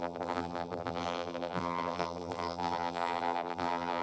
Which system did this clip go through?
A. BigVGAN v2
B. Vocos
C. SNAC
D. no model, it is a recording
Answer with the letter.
A